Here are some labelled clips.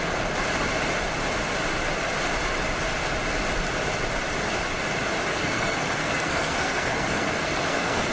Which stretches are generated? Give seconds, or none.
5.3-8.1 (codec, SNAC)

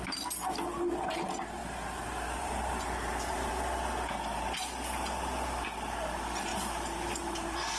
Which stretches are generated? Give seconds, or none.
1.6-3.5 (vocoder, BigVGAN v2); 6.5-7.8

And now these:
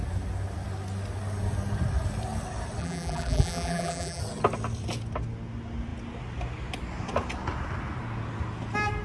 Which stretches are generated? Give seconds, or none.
2.8-4.2 (vocoder, BigVGAN v2)

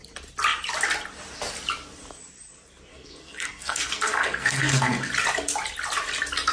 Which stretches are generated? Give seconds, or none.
2.9-5.1 (codec, SNAC)

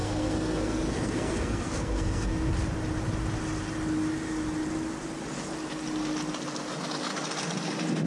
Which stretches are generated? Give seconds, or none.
0.0-2.5 (codec, SNAC)